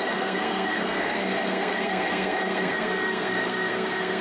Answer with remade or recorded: remade